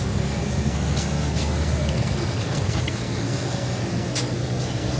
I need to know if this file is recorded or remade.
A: remade